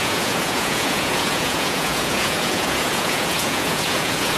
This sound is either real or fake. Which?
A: fake